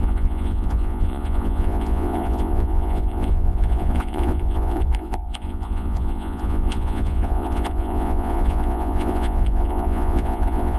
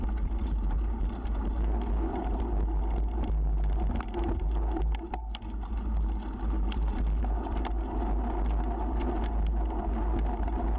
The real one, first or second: second